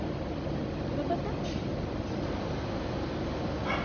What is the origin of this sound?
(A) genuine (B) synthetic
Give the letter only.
A